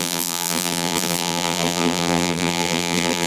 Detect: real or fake fake